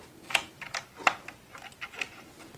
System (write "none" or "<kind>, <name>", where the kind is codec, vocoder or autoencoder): none